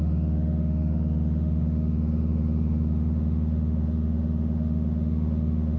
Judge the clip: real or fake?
fake